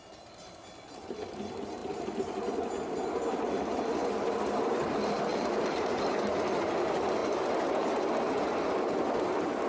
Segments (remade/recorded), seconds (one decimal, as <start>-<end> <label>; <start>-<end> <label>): 0.0-5.3 recorded; 5.3-5.9 remade; 5.9-9.7 recorded